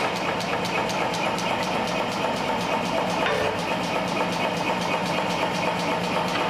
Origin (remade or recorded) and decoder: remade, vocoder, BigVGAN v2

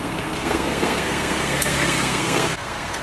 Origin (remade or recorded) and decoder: remade, codec, SNAC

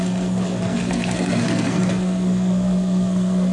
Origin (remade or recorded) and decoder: remade, codec, SNAC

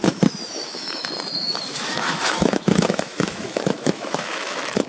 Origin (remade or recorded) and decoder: remade, autoencoder, DAC-VAE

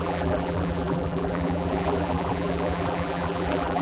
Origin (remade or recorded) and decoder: remade, vocoder, BigVGAN v2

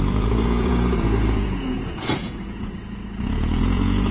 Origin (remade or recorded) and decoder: remade, vocoder, Vocos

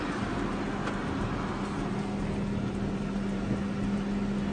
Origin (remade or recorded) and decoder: recorded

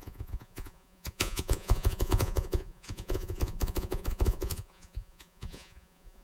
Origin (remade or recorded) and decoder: remade, vocoder, Vocos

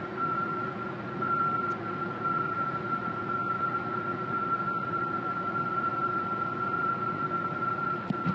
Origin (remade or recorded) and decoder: remade, vocoder, Vocos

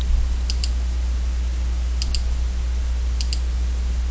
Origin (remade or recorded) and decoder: recorded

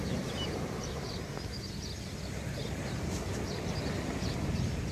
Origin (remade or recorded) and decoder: recorded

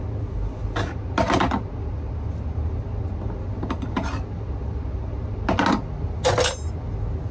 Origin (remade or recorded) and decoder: recorded